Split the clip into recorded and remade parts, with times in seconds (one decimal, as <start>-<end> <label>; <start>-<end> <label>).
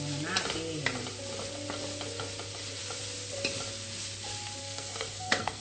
0.0-4.6 recorded; 4.6-5.6 remade